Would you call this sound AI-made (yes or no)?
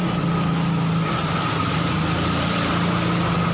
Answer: no